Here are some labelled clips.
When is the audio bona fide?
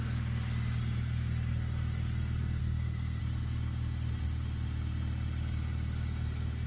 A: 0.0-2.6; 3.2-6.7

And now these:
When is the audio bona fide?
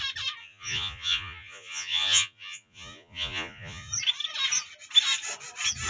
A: 0.0-0.4; 3.9-5.9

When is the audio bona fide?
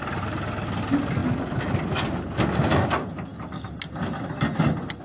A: 0.0-5.0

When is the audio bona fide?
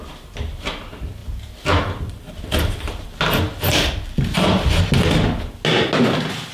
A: 0.0-1.2; 3.2-3.7; 4.8-6.5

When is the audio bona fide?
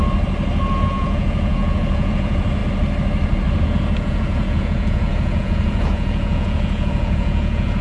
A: 0.0-0.7; 2.6-3.6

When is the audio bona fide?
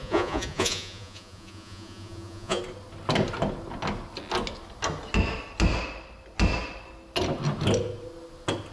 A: 2.6-8.7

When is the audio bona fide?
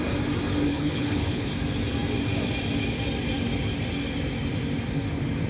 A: 0.0-0.7; 1.5-5.5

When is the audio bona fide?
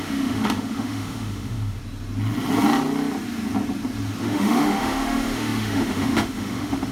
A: 1.8-4.2